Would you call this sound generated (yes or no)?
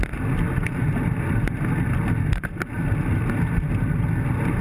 no